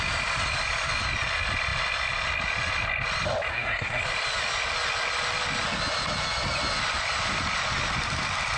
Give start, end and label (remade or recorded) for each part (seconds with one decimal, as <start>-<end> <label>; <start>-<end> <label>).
0.0-3.5 recorded; 3.5-4.0 remade; 4.0-8.6 recorded